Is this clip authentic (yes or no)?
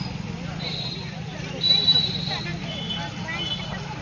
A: yes